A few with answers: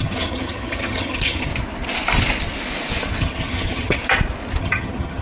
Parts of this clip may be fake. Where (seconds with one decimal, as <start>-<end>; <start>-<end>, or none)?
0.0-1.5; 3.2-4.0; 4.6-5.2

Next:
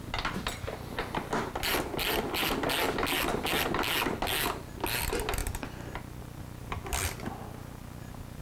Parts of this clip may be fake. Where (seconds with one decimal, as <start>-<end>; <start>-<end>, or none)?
none

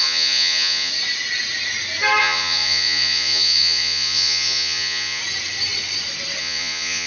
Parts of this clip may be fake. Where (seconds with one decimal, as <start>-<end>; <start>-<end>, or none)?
0.0-0.9; 2.2-5.2; 6.4-7.1

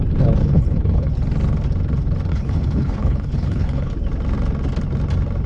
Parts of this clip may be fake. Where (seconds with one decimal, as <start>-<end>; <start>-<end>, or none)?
0.4-1.1; 2.3-3.9